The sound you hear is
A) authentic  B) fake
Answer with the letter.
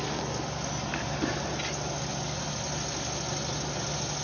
A